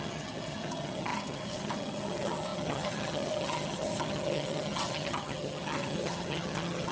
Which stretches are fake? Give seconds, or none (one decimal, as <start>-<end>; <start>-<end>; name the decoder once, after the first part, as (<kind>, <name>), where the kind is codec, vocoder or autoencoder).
0.0-6.9 (vocoder, HiFi-GAN)